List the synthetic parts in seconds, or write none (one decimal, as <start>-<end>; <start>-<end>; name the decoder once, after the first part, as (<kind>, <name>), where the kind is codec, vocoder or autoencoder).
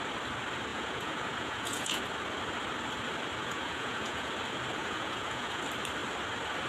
0.7-2.0 (vocoder, Vocos); 3.4-4.3; 4.8-5.6